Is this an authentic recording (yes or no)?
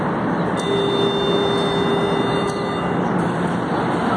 yes